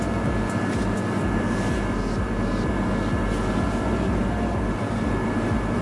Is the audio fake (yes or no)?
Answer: no